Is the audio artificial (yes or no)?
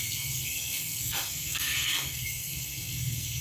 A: yes